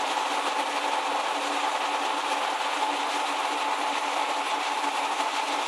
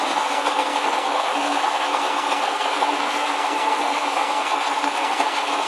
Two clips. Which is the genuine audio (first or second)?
first